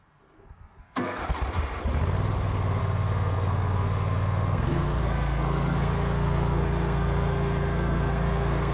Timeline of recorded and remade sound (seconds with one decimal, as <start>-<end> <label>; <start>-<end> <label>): 0.0-1.2 remade; 1.2-2.8 recorded; 2.8-8.7 remade